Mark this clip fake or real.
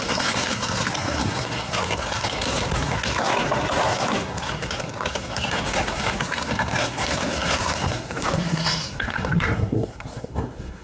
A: fake